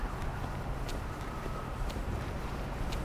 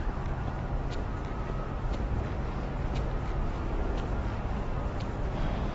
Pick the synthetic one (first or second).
first